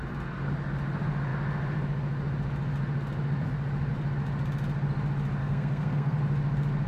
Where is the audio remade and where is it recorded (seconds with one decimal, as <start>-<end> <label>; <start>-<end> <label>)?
0.0-5.4 recorded; 5.4-6.2 remade; 6.2-6.9 recorded